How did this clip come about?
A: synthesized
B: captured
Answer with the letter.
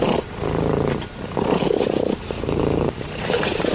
B